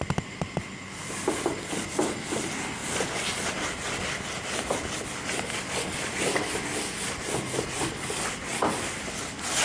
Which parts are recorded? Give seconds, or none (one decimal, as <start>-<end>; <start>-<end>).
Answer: 0.0-9.6